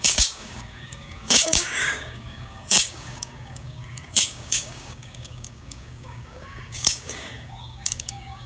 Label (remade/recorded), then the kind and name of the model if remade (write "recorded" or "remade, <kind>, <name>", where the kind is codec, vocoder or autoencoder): remade, codec, DAC